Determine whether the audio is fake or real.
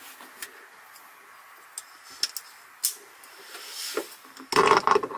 real